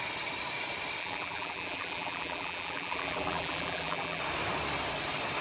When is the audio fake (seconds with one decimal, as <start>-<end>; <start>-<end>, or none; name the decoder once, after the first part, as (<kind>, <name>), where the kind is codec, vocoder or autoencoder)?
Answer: 1.0-4.2 (vocoder, BigVGAN v2)